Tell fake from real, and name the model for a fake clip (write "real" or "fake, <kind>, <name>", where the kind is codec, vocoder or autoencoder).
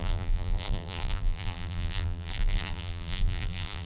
fake, vocoder, BigVGAN v2